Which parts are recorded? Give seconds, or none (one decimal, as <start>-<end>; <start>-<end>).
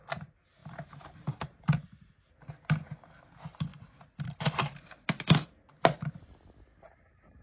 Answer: 0.0-0.6; 2.3-7.4